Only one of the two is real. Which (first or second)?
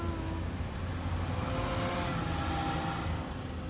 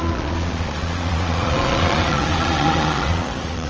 first